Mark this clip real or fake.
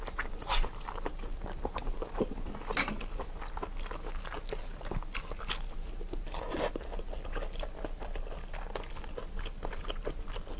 real